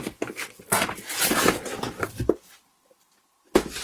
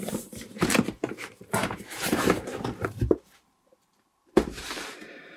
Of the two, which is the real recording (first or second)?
first